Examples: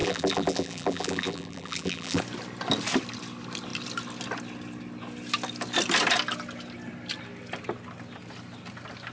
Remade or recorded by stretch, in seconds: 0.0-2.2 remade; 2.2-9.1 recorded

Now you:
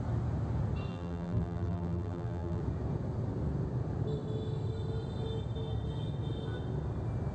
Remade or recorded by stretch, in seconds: 0.0-0.9 recorded; 0.9-2.6 remade; 2.6-7.3 recorded

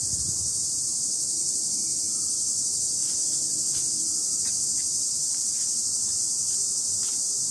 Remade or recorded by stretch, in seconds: 0.0-3.0 remade; 3.0-4.4 recorded; 4.4-7.5 remade

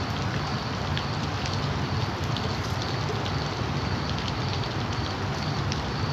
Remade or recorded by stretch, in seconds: 0.0-6.1 recorded

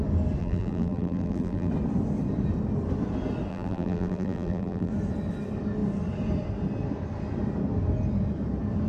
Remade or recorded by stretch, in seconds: 0.0-0.4 recorded; 0.4-1.7 remade; 1.7-3.5 recorded; 3.5-4.9 remade; 4.9-8.9 recorded

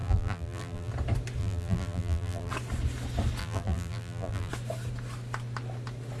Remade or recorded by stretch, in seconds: 0.0-0.9 remade; 0.9-1.4 recorded; 1.4-2.5 remade; 2.5-3.4 recorded; 3.4-4.5 remade; 4.5-6.2 recorded

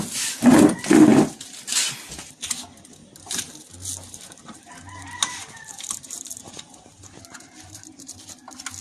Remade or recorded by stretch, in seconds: 0.0-3.0 recorded; 3.0-3.7 remade; 3.7-4.4 recorded; 4.4-8.4 remade; 8.4-8.8 recorded